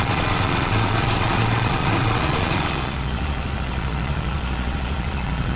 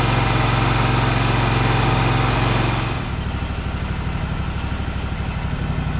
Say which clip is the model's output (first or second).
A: first